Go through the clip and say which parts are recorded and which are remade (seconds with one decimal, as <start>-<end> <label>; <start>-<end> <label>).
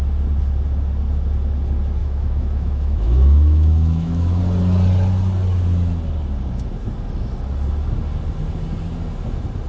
0.0-2.0 recorded; 2.0-4.4 remade; 4.4-9.7 recorded